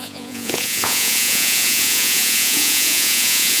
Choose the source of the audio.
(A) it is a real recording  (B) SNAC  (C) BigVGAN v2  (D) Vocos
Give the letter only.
D